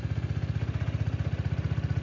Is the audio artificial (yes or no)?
no